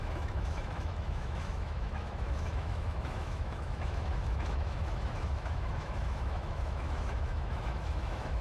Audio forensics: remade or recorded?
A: remade